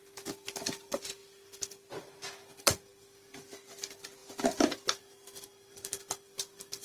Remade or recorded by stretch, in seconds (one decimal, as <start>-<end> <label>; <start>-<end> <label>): 0.0-1.2 remade; 1.2-1.7 recorded; 1.7-6.8 remade